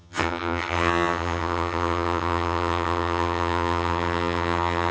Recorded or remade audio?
remade